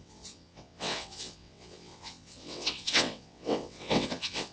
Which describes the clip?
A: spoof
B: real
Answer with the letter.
A